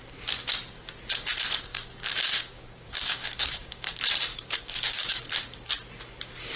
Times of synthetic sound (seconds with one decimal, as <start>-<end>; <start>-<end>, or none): 1.7-3.9; 4.3-5.2